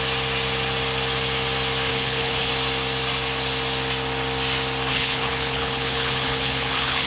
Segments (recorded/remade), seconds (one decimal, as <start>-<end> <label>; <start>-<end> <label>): 0.0-1.9 recorded; 1.9-2.5 remade; 2.5-4.9 recorded; 4.9-7.1 remade